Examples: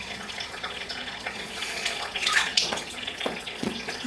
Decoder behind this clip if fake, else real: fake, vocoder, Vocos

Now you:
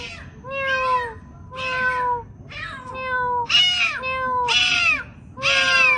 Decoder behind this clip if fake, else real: real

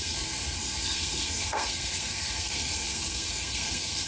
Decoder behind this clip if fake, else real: fake, codec, SNAC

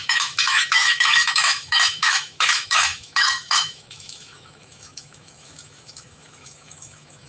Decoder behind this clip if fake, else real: fake, autoencoder, DAC-VAE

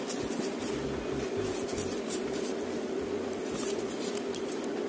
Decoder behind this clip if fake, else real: real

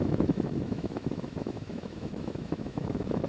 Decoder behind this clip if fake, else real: fake, autoencoder, DAC-VAE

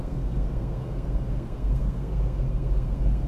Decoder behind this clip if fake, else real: fake, codec, SNAC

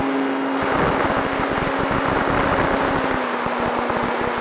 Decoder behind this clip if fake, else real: real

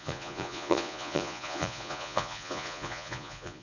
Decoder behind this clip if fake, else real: fake, vocoder, Vocos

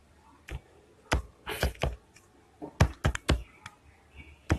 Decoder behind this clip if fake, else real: real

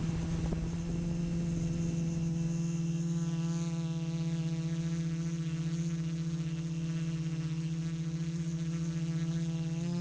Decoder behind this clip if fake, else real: real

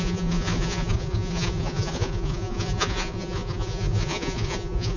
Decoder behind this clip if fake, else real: fake, vocoder, Vocos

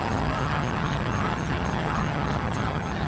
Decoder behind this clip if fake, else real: fake, vocoder, HiFi-GAN